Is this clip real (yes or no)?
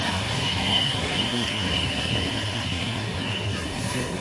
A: no